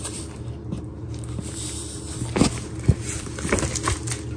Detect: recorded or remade recorded